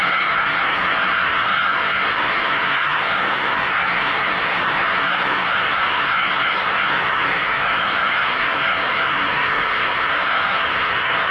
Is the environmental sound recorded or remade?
remade